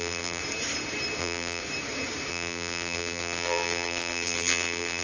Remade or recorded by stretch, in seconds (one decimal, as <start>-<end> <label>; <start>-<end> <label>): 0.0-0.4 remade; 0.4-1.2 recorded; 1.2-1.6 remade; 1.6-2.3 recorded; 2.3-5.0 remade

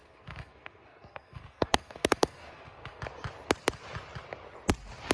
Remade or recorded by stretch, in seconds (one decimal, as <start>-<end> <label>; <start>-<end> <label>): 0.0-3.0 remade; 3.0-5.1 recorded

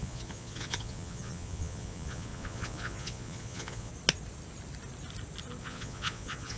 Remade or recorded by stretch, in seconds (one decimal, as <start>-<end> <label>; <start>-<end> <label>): 0.0-3.9 remade; 3.9-5.6 recorded; 5.6-6.6 remade